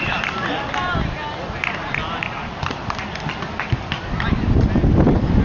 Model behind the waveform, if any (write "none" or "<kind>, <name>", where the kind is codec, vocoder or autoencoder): none